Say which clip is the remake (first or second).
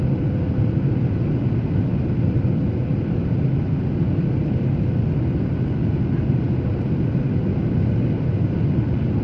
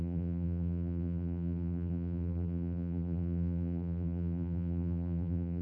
second